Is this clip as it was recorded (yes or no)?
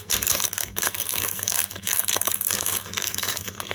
no